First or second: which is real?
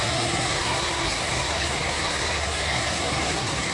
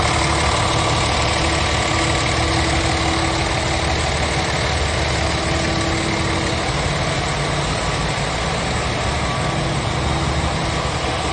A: second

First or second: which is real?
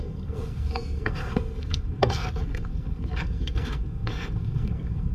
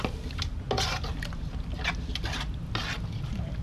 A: second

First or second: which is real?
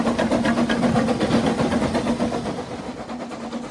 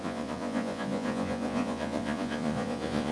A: first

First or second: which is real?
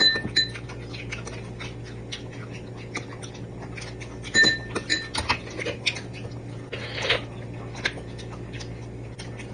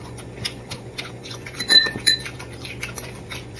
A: first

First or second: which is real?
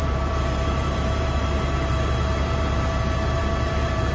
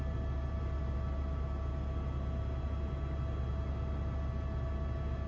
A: second